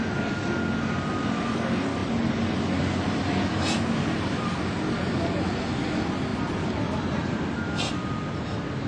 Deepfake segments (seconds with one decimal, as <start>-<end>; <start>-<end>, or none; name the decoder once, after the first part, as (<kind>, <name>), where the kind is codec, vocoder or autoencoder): none

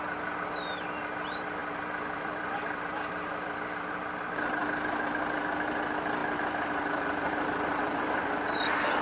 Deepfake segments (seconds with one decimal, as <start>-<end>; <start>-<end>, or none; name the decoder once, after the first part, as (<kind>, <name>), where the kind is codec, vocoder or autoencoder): 1.6-3.9 (vocoder, BigVGAN v2); 4.6-5.4; 6.2-8.6

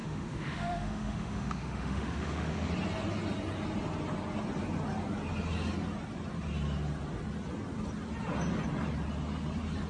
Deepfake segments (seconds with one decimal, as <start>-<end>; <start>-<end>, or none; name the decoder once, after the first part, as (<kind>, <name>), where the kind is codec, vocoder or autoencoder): 0.0-2.7 (autoencoder, DAC-VAE)

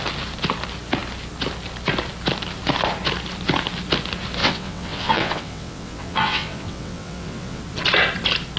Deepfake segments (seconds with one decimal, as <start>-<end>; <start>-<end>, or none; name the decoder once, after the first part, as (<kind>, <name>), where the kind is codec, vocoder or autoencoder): 4.4-7.6 (vocoder, WaveNeXt)